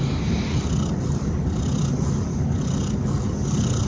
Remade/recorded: recorded